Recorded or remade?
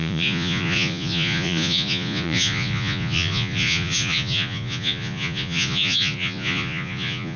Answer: remade